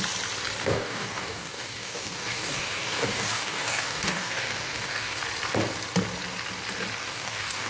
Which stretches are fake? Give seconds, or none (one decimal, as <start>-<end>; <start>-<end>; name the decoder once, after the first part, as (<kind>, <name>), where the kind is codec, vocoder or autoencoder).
0.6-5.2 (codec, DAC); 7.0-7.7